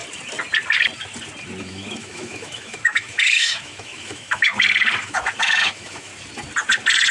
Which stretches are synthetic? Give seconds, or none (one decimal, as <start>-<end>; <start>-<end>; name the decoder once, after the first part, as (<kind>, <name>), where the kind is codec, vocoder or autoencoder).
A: 1.6-4.5 (autoencoder, DAC-VAE); 5.0-6.1